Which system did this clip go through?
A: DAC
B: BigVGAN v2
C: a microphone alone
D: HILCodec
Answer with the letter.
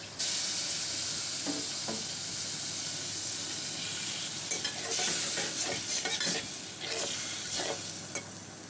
C